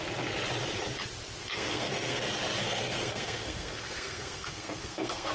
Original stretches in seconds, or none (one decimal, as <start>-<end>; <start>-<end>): 0.0-1.4; 2.2-2.6